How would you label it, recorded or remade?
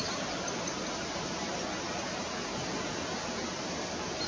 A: recorded